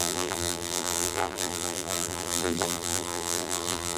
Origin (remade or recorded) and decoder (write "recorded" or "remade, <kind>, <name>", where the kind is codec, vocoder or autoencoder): remade, vocoder, BigVGAN v2